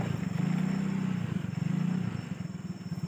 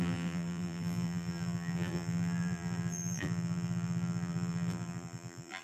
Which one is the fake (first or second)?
second